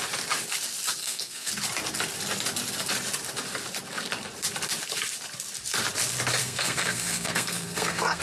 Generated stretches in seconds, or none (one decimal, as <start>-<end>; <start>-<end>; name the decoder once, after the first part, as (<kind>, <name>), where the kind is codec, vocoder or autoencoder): 1.0-1.5 (codec, SNAC); 6.4-8.2